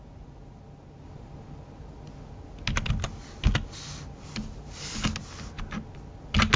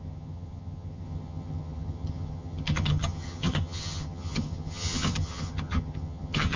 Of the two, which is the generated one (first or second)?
second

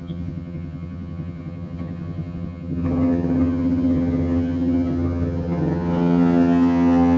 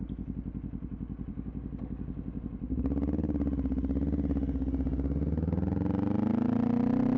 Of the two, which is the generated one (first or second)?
first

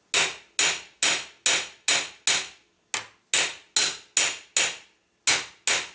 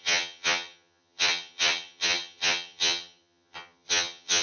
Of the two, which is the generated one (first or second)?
second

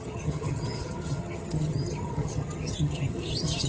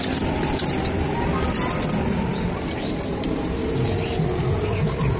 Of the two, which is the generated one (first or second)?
first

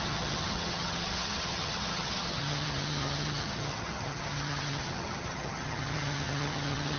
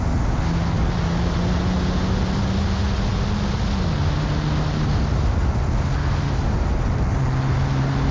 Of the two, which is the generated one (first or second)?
first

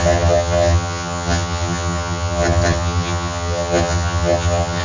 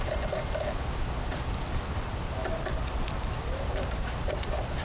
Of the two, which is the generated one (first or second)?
first